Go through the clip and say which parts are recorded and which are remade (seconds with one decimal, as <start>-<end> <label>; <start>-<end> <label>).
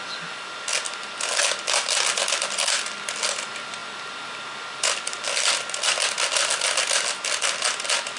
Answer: 0.0-8.2 recorded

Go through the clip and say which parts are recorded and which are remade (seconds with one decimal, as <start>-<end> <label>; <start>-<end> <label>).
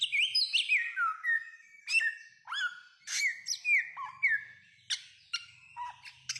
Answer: 0.0-6.4 recorded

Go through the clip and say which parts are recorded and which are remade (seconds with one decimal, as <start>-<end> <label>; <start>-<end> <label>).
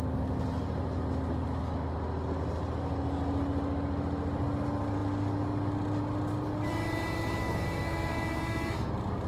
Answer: 0.0-7.4 recorded; 7.4-8.9 remade; 8.9-9.3 recorded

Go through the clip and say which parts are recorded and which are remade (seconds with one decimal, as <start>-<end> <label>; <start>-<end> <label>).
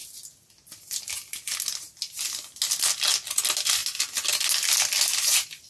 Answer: 0.0-5.7 recorded